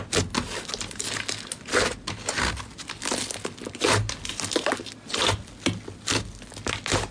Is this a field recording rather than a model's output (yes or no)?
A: yes